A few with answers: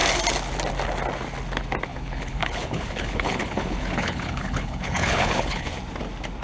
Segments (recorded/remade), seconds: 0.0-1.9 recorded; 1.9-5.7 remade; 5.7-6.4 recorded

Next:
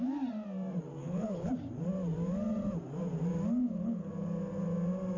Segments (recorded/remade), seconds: 0.0-1.0 recorded; 1.0-1.5 remade; 1.5-3.6 recorded; 3.6-4.1 remade; 4.1-5.2 recorded

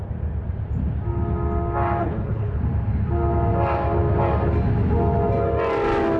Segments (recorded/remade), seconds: 0.0-2.0 recorded; 2.0-2.6 remade; 2.6-6.2 recorded

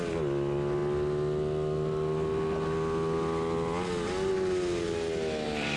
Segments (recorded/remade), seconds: 0.0-5.8 recorded

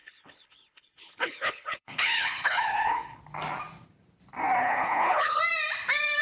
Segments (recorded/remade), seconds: 0.0-3.2 remade; 3.2-4.6 recorded; 4.6-5.4 remade; 5.4-6.2 recorded

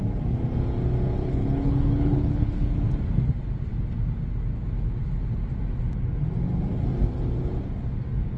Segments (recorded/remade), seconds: 0.0-1.2 recorded; 1.2-2.8 remade; 2.8-8.4 recorded